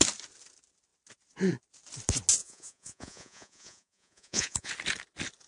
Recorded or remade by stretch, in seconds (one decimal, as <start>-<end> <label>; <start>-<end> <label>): 0.0-2.4 recorded; 2.4-4.7 remade; 4.7-5.5 recorded